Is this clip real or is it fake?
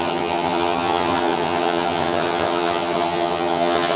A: fake